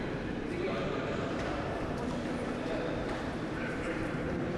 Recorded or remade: remade